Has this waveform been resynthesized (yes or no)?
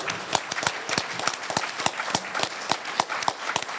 no